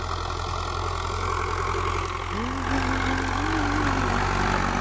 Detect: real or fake real